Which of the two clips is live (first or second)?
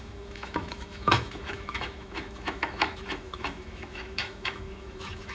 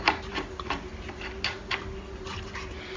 second